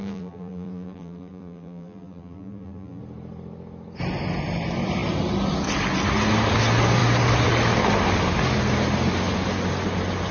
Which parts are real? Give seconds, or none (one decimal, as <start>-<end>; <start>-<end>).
3.0-10.3